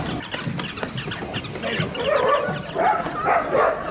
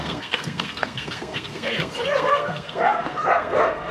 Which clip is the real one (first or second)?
first